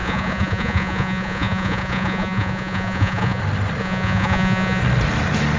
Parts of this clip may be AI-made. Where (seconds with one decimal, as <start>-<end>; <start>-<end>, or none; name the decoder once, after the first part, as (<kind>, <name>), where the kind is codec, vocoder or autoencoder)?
0.0-3.4 (vocoder, Vocos); 3.8-4.8